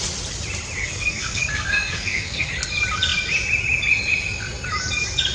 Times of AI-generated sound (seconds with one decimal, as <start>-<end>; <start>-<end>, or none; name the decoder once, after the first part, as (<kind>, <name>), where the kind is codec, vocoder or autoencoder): 0.8-2.5 (codec, SNAC)